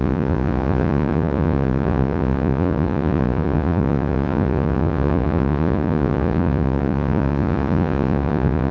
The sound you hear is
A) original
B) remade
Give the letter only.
B